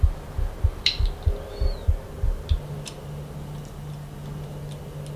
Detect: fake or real real